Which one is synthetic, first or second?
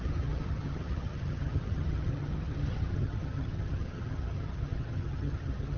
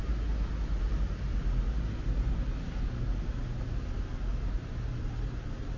first